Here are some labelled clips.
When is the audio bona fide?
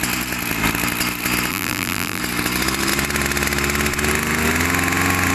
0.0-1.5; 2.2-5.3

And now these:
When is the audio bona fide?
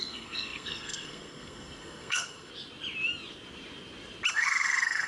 2.5-4.3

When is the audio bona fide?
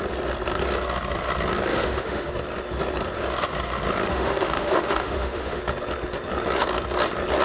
0.0-1.7; 2.3-4.1; 5.6-7.4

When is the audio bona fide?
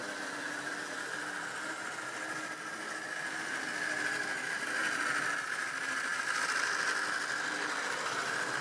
0.0-8.6